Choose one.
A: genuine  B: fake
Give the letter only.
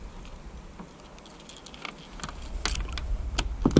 A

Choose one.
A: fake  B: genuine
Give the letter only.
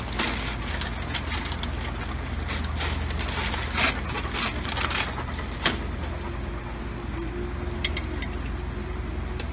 B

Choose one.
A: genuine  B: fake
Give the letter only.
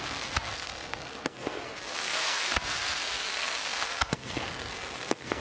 B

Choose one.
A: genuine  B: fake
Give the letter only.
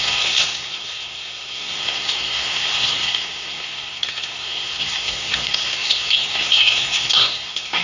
B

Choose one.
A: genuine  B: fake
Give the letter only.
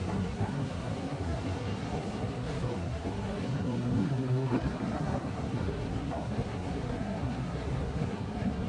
B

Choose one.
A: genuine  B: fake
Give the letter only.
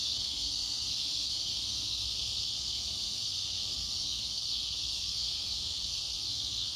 B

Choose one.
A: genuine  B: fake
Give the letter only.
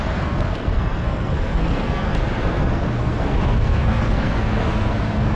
B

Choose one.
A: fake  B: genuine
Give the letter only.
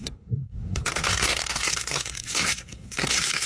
A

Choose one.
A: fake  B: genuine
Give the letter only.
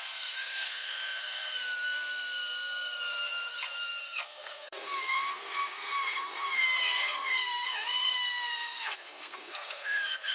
A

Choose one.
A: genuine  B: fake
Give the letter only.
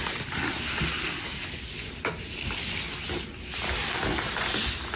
A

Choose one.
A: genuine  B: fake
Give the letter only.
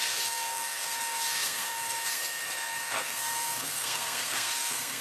B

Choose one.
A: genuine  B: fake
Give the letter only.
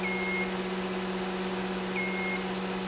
A